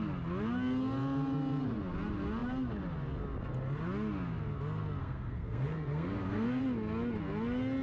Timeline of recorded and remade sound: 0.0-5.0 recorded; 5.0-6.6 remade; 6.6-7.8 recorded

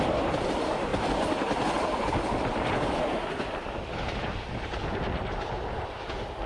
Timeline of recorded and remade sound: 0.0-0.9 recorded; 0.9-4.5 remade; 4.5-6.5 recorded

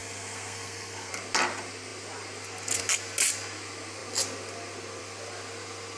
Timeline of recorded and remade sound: 0.0-1.1 remade; 1.1-6.0 recorded

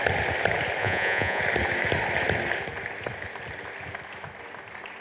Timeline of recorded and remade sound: 0.0-0.8 recorded; 0.8-1.4 remade; 1.4-5.0 recorded

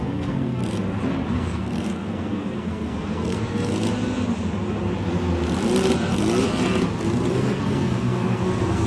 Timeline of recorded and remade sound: 0.0-0.6 remade; 0.6-1.3 recorded; 1.3-3.7 remade; 3.7-7.3 recorded; 7.3-8.9 remade

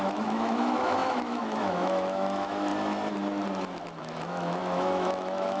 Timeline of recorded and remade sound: 0.0-2.7 remade; 2.7-4.0 recorded; 4.0-5.6 remade